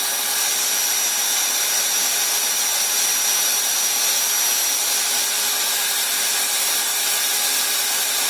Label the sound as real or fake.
real